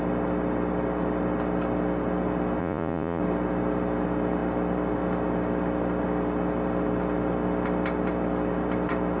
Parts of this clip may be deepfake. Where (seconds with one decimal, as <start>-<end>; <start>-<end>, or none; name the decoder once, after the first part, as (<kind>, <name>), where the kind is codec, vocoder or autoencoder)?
2.6-3.2 (vocoder, Vocos)